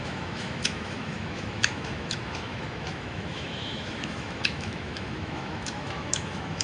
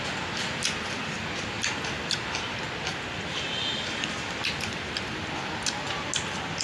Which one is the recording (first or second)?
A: second